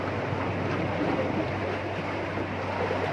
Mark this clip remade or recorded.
recorded